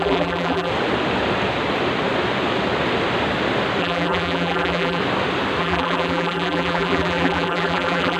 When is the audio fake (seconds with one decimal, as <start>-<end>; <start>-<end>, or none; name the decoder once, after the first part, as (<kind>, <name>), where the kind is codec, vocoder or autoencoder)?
0.0-0.7 (vocoder, BigVGAN v2); 3.8-5.0; 5.6-8.2